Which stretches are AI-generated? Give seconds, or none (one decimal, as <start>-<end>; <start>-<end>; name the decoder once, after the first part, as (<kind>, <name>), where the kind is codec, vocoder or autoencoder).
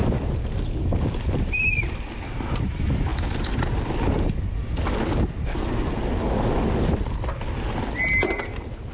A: none